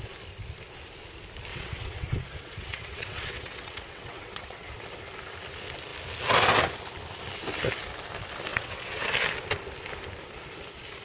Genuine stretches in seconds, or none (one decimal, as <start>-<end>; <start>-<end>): 0.0-1.5; 4.7-8.5; 9.0-11.0